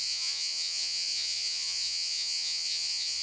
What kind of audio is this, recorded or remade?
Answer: remade